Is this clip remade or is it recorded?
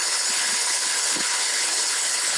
remade